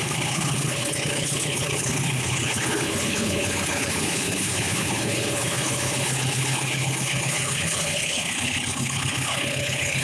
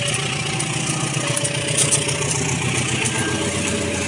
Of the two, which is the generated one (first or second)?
first